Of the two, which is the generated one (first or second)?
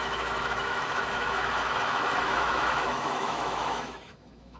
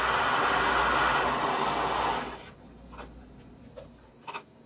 first